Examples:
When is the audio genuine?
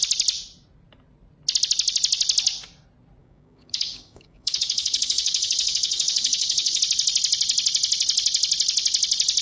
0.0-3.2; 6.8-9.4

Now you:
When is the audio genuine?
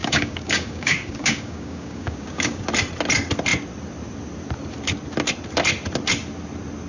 2.6-6.9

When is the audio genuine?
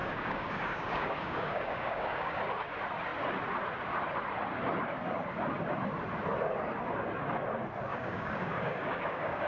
2.4-7.9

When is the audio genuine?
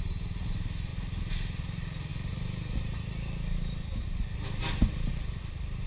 0.0-5.9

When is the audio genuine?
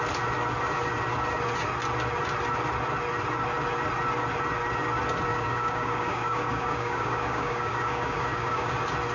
0.0-5.3; 8.7-9.1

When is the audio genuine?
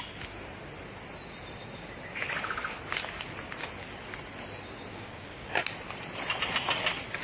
0.0-4.9; 5.5-7.2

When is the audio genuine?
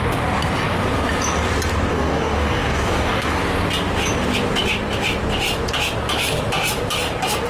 0.0-1.9; 3.4-7.5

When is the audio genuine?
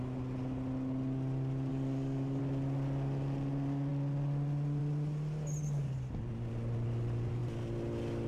0.0-1.7; 2.4-8.3